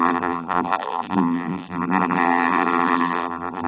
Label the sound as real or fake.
fake